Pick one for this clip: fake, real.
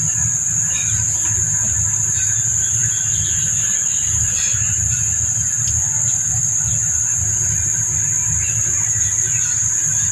real